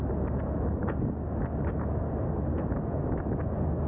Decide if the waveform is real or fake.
real